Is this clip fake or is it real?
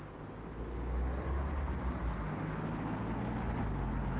real